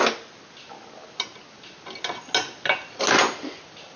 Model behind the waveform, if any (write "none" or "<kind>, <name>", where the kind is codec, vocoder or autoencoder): none